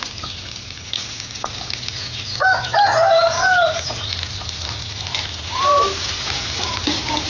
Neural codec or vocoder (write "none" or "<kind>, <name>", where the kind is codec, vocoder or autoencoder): none